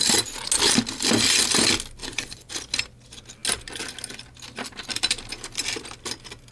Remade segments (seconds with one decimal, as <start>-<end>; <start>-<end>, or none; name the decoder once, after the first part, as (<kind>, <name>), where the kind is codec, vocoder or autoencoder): 2.0-2.5 (vocoder, Vocos)